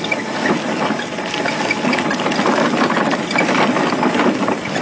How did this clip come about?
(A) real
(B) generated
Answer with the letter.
A